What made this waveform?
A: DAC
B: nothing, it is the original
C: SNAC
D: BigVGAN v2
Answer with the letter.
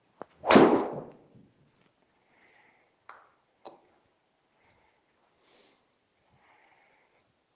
B